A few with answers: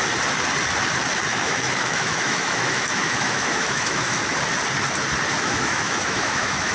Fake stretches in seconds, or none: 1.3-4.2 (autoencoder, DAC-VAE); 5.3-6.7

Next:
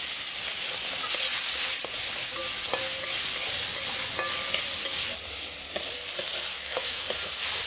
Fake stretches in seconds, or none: 6.5-7.0 (autoencoder, DAC-VAE)

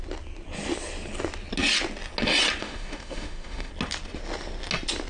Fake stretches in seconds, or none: 2.6-3.7 (autoencoder, DAC-VAE)

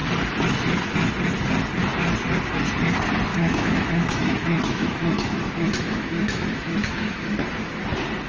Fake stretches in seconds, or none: 3.3-7.8 (autoencoder, DAC-VAE)

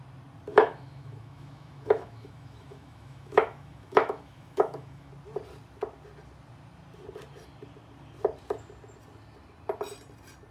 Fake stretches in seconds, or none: 0.5-5.1 (autoencoder, DAC-VAE)